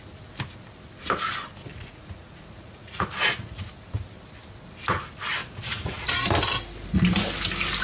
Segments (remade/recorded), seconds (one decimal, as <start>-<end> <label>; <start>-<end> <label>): 0.0-1.7 recorded; 1.7-3.7 remade; 3.7-5.4 recorded; 5.4-6.1 remade; 6.1-7.8 recorded